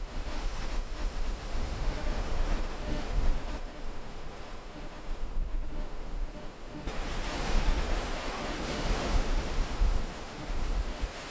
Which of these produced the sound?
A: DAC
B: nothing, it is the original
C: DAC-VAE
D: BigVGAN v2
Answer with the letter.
C